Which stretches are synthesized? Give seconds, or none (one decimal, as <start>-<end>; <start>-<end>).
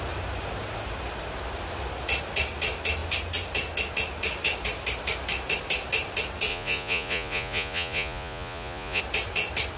6.5-9.0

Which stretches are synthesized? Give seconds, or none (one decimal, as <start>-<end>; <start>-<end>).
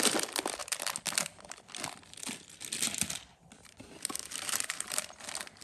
none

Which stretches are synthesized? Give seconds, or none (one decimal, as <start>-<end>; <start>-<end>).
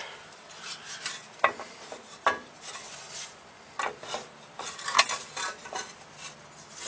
2.9-3.7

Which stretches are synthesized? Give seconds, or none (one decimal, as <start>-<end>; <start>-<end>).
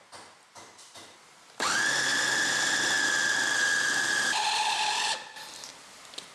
none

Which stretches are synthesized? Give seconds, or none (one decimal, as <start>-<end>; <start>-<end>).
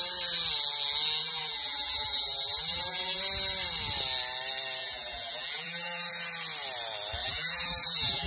1.2-3.2; 4.8-6.1; 7.2-8.3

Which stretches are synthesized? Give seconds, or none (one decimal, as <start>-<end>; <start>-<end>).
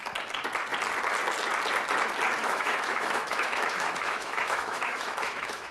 2.4-5.7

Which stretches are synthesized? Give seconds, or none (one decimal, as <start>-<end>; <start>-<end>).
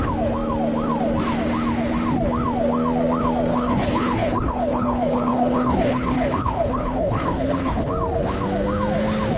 3.5-7.9